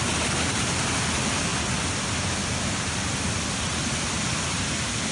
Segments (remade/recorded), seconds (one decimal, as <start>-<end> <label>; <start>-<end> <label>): 0.0-5.1 recorded